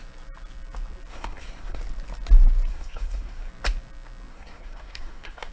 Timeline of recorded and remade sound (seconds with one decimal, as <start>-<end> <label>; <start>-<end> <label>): 0.0-1.1 recorded; 1.1-1.8 remade; 1.8-2.7 recorded; 2.7-3.5 remade; 3.5-4.3 recorded; 4.3-5.5 remade

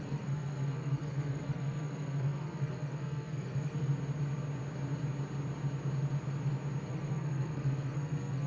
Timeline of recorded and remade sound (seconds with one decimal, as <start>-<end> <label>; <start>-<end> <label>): 0.0-3.9 remade; 3.9-6.9 recorded; 6.9-8.5 remade